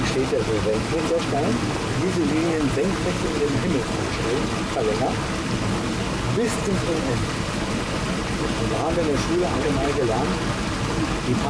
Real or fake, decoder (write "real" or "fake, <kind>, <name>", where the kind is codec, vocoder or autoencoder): real